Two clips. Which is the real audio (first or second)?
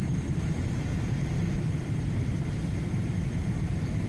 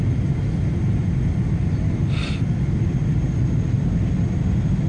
second